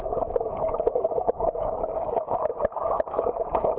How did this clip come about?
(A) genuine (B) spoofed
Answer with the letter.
B